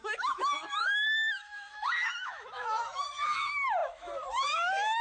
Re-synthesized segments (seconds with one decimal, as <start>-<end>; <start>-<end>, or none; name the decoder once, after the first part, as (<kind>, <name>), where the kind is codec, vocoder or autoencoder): 0.0-5.0 (autoencoder, DAC-VAE)